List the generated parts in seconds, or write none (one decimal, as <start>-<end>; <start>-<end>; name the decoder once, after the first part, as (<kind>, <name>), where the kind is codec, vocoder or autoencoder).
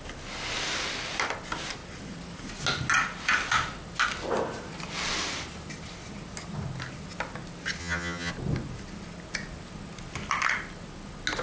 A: 7.8-8.3 (vocoder, HiFi-GAN)